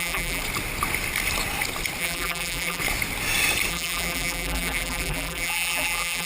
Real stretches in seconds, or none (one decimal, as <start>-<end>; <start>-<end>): 0.4-2.0; 2.8-3.7